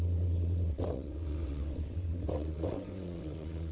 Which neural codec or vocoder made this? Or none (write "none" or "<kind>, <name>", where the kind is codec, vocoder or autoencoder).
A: vocoder, WaveNeXt